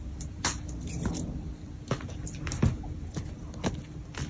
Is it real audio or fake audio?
real